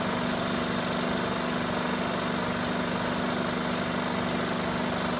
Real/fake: real